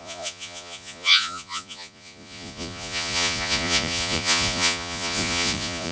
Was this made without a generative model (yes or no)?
no